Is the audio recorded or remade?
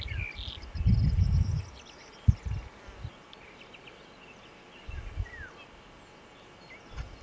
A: recorded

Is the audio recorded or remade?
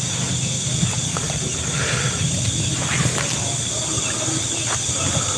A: recorded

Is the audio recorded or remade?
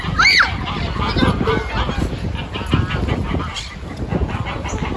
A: recorded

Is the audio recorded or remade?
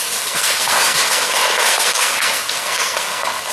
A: remade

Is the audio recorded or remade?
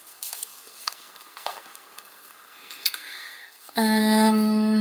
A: remade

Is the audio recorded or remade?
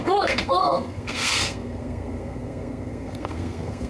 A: remade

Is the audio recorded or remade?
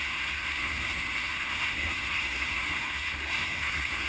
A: remade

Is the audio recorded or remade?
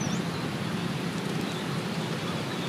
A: recorded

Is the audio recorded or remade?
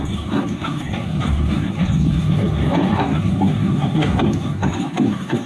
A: remade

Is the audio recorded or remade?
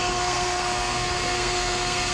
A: remade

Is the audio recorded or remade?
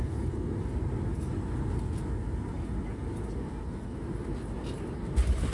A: recorded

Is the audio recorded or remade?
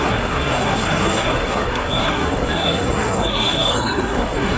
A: remade